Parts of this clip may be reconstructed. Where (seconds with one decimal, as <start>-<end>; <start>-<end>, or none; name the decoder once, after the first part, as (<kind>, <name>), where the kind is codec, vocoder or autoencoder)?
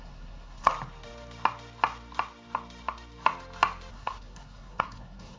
0.0-0.7 (codec, SNAC); 3.9-5.4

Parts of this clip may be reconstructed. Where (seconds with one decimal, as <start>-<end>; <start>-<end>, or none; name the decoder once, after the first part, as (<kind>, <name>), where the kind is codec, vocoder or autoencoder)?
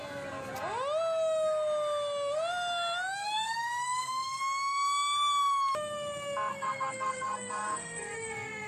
3.2-4.4 (codec, SNAC); 6.5-8.7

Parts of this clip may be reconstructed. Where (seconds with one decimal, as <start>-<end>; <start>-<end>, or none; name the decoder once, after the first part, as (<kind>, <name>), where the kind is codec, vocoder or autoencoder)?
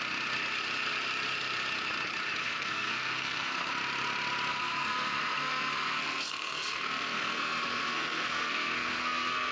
2.4-3.7 (codec, SNAC); 4.5-9.5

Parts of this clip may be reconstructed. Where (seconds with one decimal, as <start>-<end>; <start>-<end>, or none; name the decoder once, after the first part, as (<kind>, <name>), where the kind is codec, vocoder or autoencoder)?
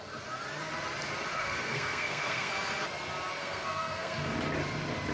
1.3-2.5 (codec, SNAC); 3.4-4.3